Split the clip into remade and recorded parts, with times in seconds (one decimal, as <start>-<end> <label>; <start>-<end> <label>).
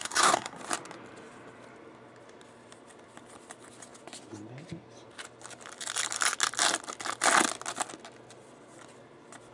0.0-0.6 remade; 0.6-9.5 recorded